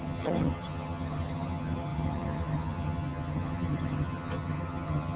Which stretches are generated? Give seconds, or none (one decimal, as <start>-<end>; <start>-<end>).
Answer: 0.0-5.2